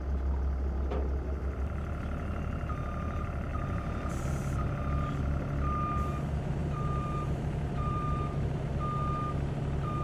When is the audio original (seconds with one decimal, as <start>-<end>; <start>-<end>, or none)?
0.0-3.5; 4.8-6.6; 8.7-10.0

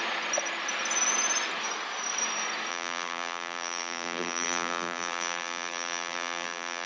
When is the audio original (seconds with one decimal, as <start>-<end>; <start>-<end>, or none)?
0.0-2.7

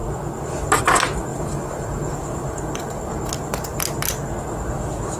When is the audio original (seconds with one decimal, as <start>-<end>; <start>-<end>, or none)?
0.0-1.3; 3.8-5.2

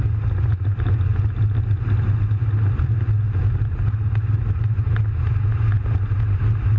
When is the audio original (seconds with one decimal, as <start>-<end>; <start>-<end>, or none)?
0.0-6.8

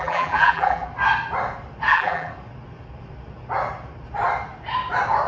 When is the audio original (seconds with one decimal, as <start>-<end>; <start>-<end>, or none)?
0.9-1.9; 2.3-5.3

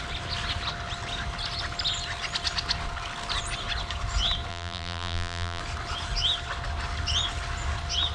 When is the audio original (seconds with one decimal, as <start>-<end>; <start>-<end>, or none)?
0.0-4.5; 5.6-8.1

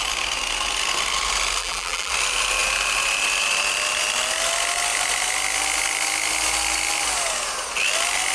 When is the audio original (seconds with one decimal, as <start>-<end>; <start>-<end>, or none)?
0.0-1.6; 2.1-8.3

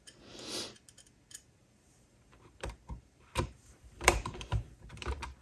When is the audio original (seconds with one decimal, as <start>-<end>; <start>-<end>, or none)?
0.0-1.6; 4.8-5.4